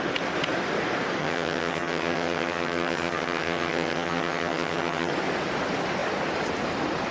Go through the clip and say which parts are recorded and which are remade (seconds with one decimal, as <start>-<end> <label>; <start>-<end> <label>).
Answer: 0.0-1.2 recorded; 1.2-5.1 remade; 5.1-7.1 recorded